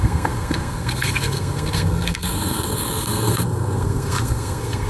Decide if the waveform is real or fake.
fake